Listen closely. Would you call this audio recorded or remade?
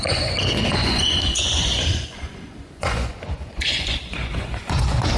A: remade